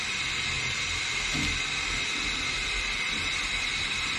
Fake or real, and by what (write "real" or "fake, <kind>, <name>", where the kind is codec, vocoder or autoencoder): real